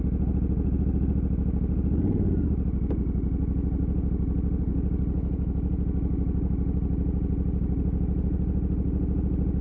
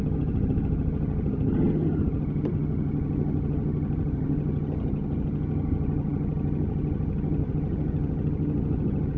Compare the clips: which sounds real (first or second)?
first